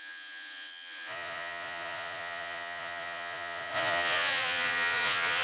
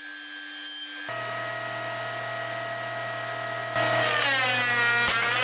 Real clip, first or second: second